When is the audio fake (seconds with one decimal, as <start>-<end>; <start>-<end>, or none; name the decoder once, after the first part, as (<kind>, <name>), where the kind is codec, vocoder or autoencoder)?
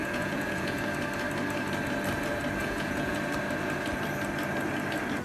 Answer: 0.0-0.8 (vocoder, Vocos); 2.6-3.2